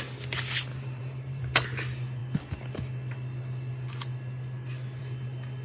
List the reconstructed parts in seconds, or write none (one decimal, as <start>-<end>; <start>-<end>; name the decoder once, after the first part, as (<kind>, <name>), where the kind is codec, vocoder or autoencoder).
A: 0.7-1.4 (vocoder, BigVGAN v2)